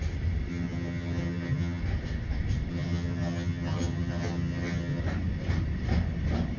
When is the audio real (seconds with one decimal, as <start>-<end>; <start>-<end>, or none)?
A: 0.0-0.5; 1.8-2.7; 5.0-6.6